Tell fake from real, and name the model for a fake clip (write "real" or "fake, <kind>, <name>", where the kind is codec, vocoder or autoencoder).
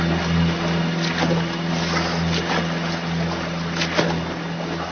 real